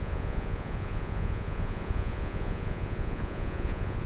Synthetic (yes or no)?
yes